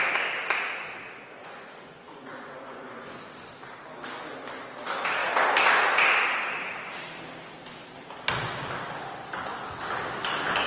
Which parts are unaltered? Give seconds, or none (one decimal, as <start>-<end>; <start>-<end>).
0.0-1.4; 3.5-10.7